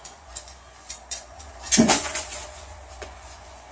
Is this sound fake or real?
fake